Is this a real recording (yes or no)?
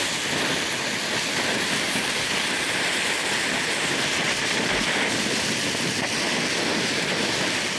yes